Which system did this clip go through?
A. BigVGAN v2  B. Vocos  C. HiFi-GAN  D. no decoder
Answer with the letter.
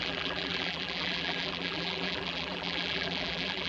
A